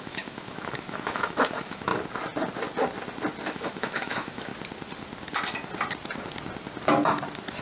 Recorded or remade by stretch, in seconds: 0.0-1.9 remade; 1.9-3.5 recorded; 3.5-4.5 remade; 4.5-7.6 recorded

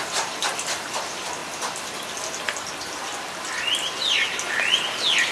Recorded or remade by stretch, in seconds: 0.0-5.3 recorded

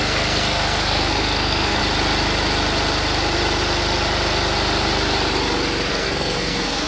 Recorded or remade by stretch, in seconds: 0.0-1.8 remade; 1.8-5.9 recorded; 5.9-6.9 remade

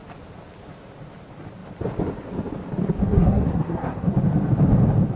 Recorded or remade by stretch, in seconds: 0.0-3.0 recorded; 3.0-4.1 remade; 4.1-5.2 recorded

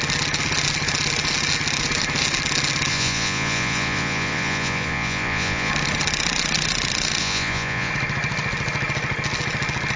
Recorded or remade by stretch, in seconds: 0.0-2.9 recorded; 2.9-5.7 remade; 5.7-7.2 recorded; 7.2-7.9 remade; 7.9-10.0 recorded